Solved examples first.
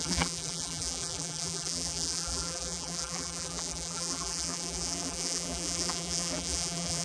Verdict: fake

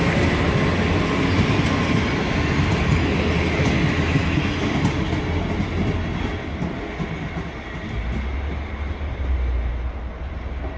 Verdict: real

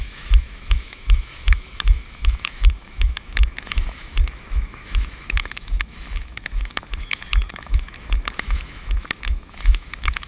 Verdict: fake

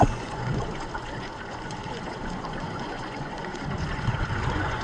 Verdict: fake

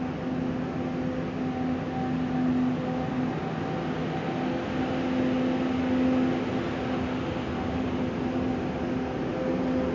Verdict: real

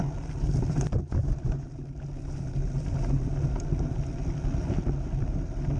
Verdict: real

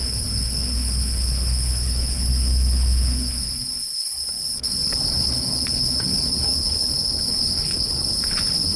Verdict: fake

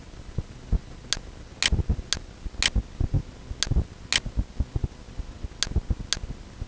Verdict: real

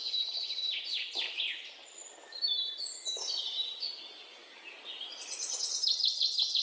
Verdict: fake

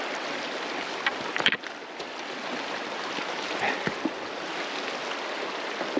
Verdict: real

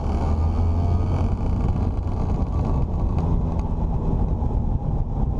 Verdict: real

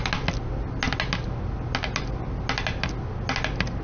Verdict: real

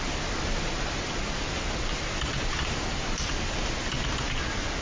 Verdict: real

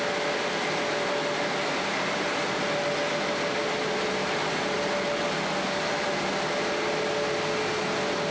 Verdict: real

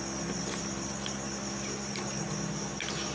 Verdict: real